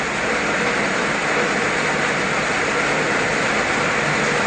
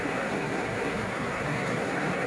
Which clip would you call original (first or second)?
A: first